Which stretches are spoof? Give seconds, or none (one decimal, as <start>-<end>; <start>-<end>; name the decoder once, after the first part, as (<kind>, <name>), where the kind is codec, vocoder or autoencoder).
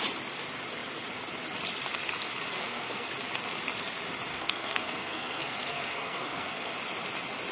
2.5-3.1 (codec, SNAC); 4.3-6.7